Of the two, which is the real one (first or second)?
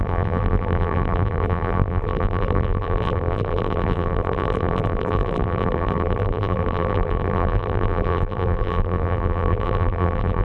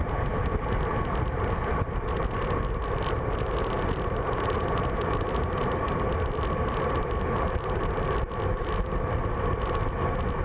second